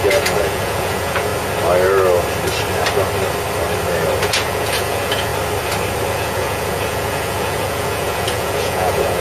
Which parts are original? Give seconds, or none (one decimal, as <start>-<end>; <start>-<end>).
1.3-4.2; 5.3-6.1